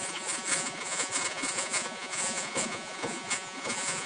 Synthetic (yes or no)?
yes